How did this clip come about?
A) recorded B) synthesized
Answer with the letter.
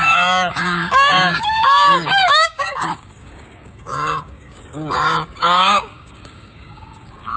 B